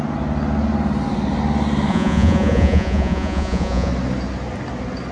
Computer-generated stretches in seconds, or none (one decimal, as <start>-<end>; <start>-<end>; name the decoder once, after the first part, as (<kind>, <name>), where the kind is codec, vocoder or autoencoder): 1.9-3.9 (vocoder, Vocos)